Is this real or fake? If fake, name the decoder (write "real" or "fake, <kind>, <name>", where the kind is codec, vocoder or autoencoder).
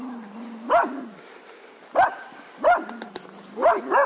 real